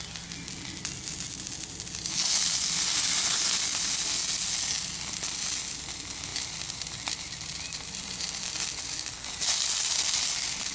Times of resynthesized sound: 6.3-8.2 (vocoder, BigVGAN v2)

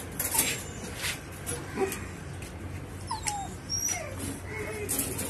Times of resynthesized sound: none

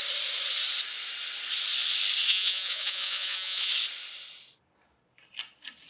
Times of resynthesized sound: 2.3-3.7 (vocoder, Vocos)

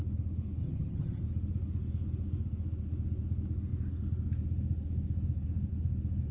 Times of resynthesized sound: 0.6-1.2 (vocoder, HiFi-GAN)

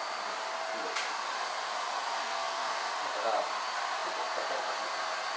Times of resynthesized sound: 2.2-2.9 (codec, SNAC)

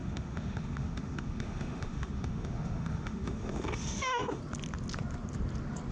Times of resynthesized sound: 0.0-4.4 (autoencoder, DAC-VAE)

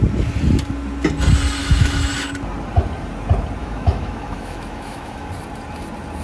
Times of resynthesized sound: 1.6-2.1 (autoencoder, DAC-VAE); 3.6-5.3

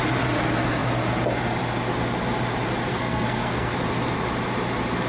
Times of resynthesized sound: 2.9-3.7 (codec, SNAC)